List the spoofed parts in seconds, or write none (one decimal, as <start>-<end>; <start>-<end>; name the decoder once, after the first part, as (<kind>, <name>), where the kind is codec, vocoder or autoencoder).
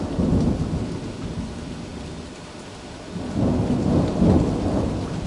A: none